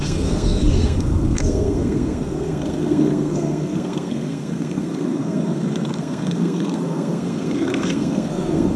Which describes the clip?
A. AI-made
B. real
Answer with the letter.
A